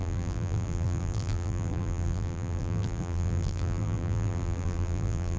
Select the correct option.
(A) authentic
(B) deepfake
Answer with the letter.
B